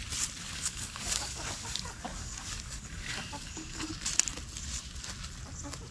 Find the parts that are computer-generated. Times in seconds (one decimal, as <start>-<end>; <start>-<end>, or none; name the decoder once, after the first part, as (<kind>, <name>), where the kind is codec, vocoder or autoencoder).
0.4-3.9 (codec, DAC)